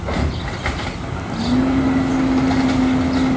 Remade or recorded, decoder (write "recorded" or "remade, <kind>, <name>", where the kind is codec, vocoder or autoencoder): recorded